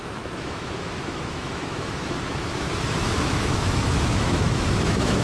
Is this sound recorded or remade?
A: remade